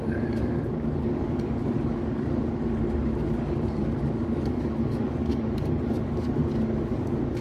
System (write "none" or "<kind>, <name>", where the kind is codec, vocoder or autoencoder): codec, DAC